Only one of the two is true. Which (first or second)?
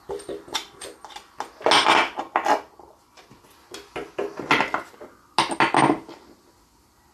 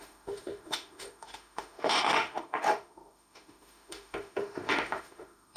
first